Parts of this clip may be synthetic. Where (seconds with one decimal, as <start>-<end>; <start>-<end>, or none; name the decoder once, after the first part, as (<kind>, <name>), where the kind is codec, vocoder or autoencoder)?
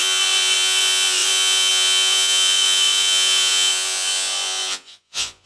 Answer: 0.0-5.5 (vocoder, Vocos)